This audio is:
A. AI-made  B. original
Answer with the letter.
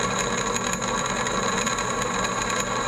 B